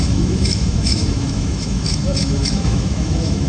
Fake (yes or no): yes